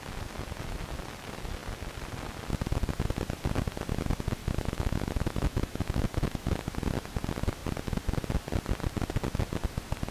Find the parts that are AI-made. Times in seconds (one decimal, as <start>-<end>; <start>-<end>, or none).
4.4-6.5